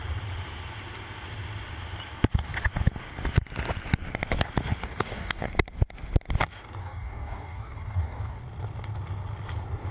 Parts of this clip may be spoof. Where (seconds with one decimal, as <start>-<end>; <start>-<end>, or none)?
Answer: 4.8-5.5; 6.8-8.4